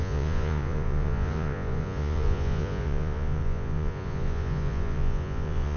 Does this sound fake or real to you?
fake